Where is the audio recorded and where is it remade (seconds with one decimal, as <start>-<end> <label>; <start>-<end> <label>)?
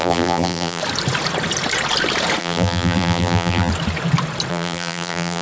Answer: 0.0-0.8 remade; 0.8-2.4 recorded; 2.4-3.7 remade; 3.7-4.5 recorded; 4.5-5.4 remade